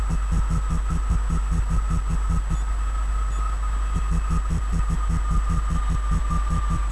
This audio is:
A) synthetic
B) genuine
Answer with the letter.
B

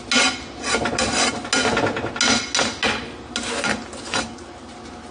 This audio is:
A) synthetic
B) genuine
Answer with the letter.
B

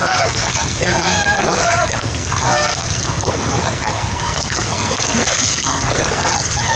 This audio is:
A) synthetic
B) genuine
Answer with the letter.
A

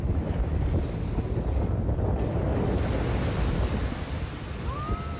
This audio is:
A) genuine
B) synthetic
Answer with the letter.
A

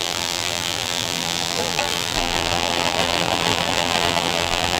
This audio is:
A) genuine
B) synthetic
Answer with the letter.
B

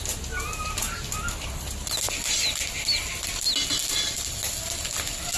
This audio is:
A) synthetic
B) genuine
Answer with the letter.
B